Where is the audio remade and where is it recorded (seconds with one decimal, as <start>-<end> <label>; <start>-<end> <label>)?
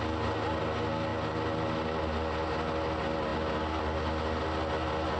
0.0-5.2 recorded